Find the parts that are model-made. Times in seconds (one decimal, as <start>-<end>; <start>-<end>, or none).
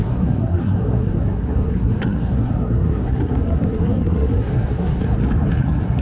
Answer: 0.0-5.1; 5.6-6.0